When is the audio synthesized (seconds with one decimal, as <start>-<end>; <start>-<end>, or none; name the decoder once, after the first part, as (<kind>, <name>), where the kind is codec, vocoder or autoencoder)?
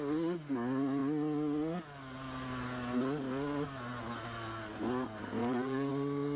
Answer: 5.4-5.9 (vocoder, Vocos)